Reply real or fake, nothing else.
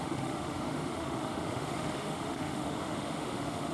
fake